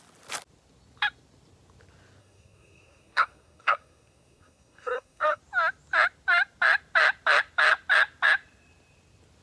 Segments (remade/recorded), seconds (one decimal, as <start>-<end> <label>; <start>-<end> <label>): 0.0-2.2 recorded; 2.2-5.4 remade; 5.4-9.4 recorded